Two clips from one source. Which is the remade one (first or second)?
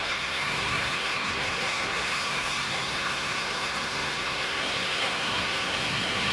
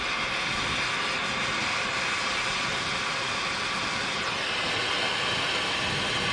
first